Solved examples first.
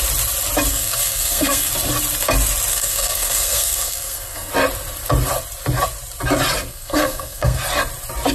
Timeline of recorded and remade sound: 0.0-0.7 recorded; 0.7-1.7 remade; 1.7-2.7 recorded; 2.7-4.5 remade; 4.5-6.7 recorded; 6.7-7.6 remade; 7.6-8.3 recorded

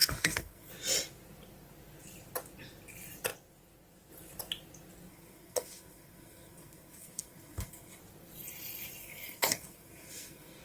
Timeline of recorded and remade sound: 0.0-0.7 remade; 0.7-5.1 recorded; 5.1-8.0 remade; 8.0-9.0 recorded; 9.0-10.6 remade

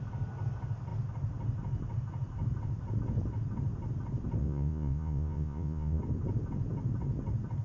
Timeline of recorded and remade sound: 0.0-4.4 recorded; 4.4-6.0 remade; 6.0-7.6 recorded

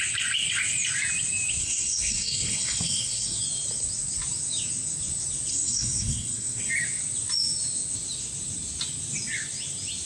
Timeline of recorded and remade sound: 0.0-1.6 recorded; 1.6-3.4 remade; 3.4-5.5 recorded; 5.5-6.7 remade; 6.7-10.0 recorded

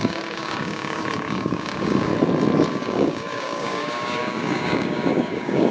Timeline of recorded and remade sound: 0.0-2.1 remade; 2.1-2.7 recorded; 2.7-5.7 remade

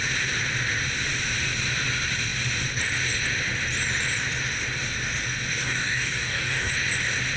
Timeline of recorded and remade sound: 0.0-5.5 recorded; 5.5-6.7 remade; 6.7-7.4 recorded

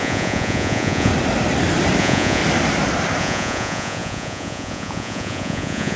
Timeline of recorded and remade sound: 0.0-1.1 remade; 1.1-2.0 recorded; 2.0-2.4 remade; 2.4-3.2 recorded; 3.2-6.0 remade

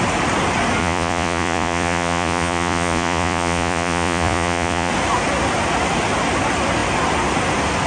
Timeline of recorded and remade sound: 0.0-0.8 recorded; 0.8-4.9 remade; 4.9-7.9 recorded